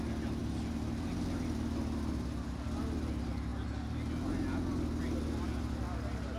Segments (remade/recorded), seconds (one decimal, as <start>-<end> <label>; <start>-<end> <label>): 0.0-6.4 recorded